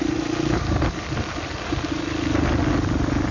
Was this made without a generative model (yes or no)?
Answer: yes